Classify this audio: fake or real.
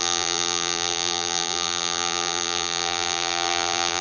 fake